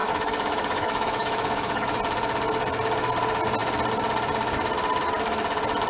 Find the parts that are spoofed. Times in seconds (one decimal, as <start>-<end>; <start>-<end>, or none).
0.0-2.0